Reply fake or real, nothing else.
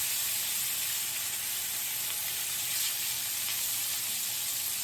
real